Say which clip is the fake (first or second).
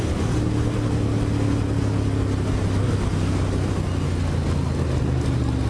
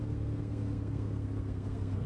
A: second